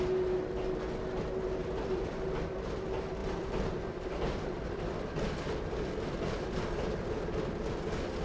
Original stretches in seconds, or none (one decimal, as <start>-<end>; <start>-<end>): 0.0-1.6; 2.8-3.2; 5.9-8.2